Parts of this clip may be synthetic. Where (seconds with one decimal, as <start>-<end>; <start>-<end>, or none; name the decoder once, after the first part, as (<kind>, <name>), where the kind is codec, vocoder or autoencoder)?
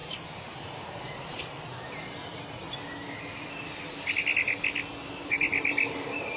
0.0-1.4 (vocoder, BigVGAN v2); 5.0-6.4